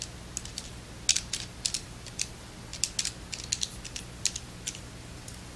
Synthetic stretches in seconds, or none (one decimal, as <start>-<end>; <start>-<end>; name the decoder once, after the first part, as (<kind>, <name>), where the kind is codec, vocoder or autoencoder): none

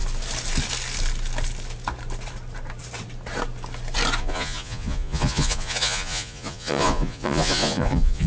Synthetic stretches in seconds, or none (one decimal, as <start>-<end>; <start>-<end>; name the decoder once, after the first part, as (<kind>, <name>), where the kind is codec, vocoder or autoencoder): 4.2-8.3 (vocoder, Vocos)

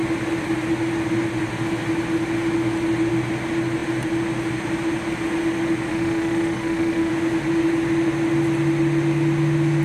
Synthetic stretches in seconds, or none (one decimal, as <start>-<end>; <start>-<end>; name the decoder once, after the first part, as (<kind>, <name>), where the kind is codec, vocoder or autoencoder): 5.9-7.1 (autoencoder, DAC-VAE)

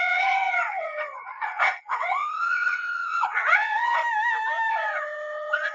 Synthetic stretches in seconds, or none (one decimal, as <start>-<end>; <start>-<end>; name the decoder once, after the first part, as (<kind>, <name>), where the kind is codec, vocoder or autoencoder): 0.0-4.0 (vocoder, WaveNeXt); 4.7-5.7

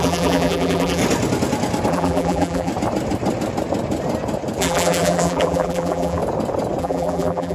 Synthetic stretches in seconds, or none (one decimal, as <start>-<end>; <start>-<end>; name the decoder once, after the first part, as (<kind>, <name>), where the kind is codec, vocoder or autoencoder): 0.0-1.0 (vocoder, BigVGAN v2); 1.9-2.7; 4.6-6.2; 6.8-7.5

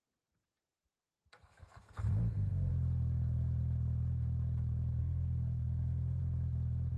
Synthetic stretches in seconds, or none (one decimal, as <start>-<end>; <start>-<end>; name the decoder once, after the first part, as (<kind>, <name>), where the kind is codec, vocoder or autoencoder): 1.2-2.7 (codec, SNAC); 5.0-6.2

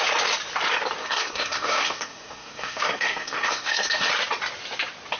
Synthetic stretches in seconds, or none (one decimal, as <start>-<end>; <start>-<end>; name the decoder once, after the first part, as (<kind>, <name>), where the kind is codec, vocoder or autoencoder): 1.0-4.1 (codec, SNAC)